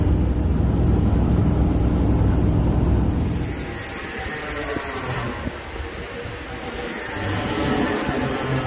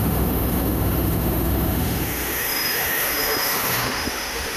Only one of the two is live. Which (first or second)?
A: first